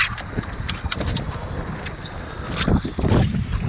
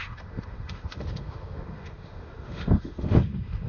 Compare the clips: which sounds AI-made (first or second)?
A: second